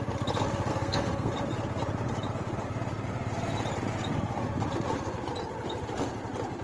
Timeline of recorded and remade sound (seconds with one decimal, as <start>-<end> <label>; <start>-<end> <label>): 0.0-0.7 recorded; 0.7-1.3 remade; 1.3-6.6 recorded